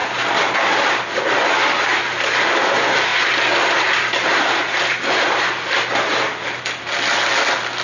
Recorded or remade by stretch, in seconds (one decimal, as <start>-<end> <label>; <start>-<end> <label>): 0.0-7.8 recorded